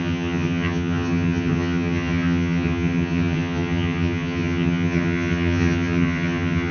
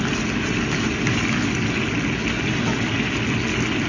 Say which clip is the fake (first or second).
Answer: first